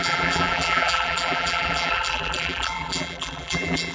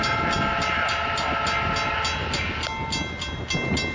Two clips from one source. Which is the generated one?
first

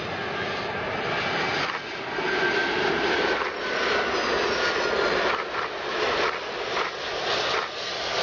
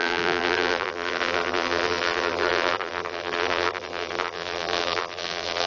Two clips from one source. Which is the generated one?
second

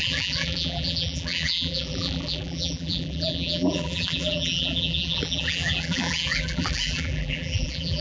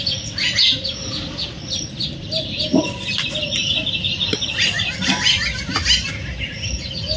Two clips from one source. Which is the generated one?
first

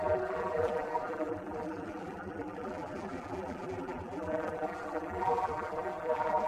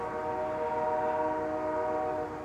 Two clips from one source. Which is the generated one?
first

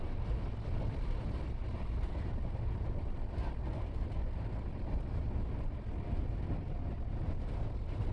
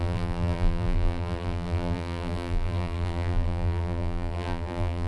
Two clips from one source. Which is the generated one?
second